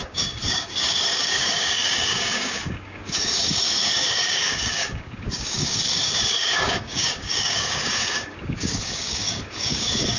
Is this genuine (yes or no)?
no